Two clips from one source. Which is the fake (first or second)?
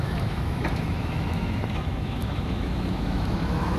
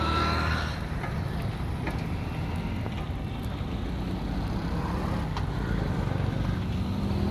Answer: first